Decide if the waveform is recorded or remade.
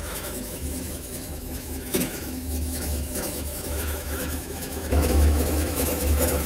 remade